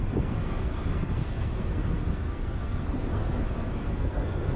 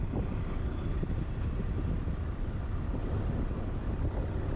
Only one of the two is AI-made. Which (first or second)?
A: first